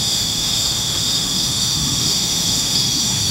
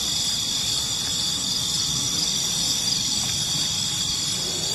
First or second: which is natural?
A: second